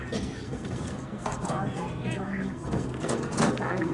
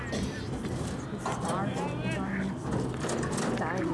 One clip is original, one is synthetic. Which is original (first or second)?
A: second